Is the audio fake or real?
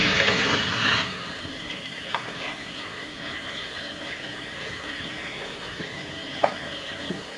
fake